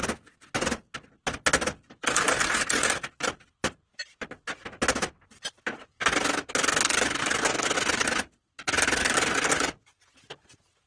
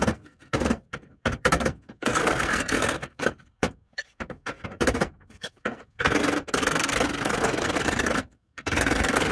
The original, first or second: first